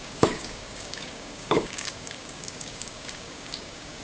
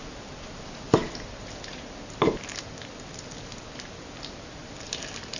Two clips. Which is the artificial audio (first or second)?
first